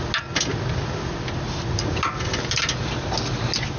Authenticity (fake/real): real